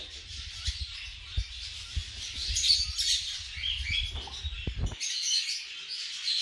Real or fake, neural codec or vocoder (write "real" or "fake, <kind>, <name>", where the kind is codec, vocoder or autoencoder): real